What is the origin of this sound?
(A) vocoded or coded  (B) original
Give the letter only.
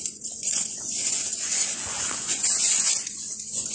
A